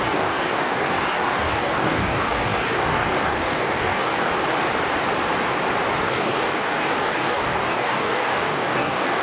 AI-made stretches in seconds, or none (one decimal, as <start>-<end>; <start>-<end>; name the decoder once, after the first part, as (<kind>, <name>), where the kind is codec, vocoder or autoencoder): 0.0-4.3 (codec, DAC); 6.0-9.2